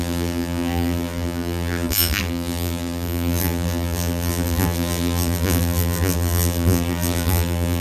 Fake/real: fake